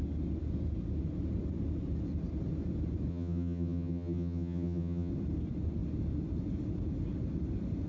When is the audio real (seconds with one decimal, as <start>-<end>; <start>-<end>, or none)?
0.0-3.1; 5.1-7.9